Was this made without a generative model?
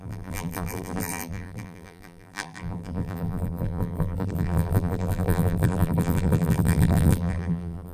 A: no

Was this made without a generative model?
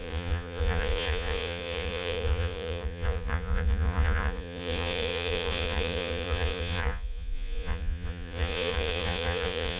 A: no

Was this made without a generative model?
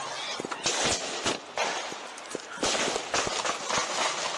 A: yes